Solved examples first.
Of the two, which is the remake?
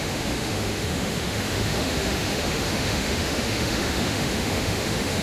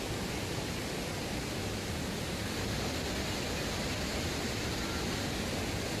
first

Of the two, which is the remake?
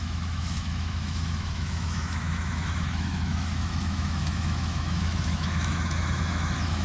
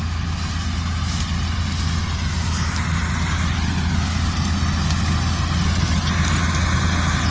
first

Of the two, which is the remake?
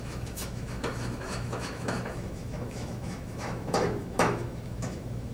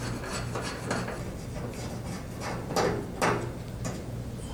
first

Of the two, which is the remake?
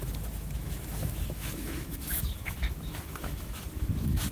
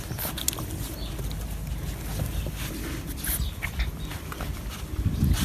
first